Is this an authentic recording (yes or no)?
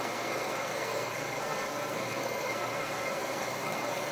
no